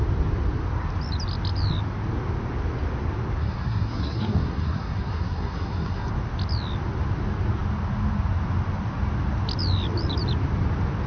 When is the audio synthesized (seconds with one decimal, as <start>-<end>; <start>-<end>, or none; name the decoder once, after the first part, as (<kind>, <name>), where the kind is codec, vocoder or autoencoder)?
3.4-6.1 (codec, SNAC)